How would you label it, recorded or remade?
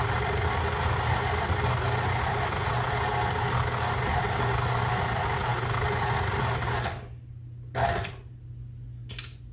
recorded